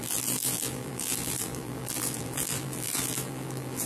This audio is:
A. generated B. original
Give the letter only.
A